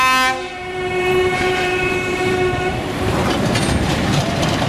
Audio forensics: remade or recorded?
remade